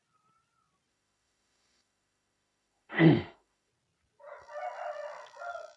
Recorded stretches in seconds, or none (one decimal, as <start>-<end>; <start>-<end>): 0.0-0.9; 3.7-5.8